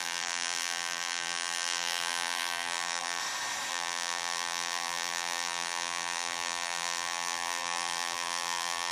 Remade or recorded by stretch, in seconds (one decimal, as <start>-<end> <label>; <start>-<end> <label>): 0.0-3.2 remade; 3.2-3.7 recorded; 3.7-8.9 remade

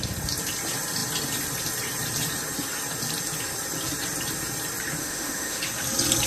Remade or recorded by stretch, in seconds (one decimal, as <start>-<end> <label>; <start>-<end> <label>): 0.0-5.0 recorded; 5.0-5.6 remade; 5.6-6.3 recorded

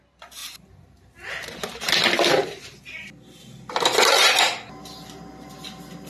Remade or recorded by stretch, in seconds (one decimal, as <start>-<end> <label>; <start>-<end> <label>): 0.0-6.1 recorded

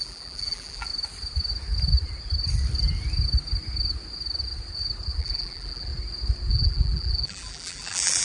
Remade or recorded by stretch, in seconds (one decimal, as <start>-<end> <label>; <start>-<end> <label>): 0.0-0.9 remade; 0.9-5.2 recorded; 5.2-5.9 remade; 5.9-6.5 recorded; 6.5-8.2 remade

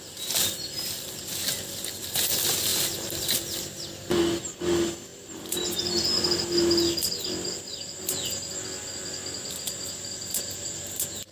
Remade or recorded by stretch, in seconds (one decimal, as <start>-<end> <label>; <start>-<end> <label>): 0.0-2.7 recorded; 2.7-4.2 remade; 4.2-5.1 recorded; 5.1-7.8 remade; 7.8-11.3 recorded